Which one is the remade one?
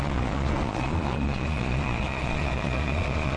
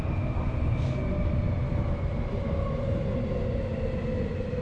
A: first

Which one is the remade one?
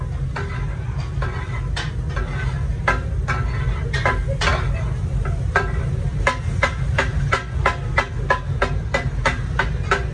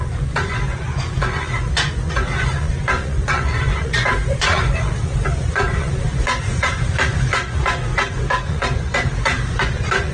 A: second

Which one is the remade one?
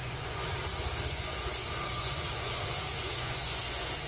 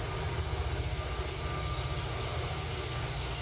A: first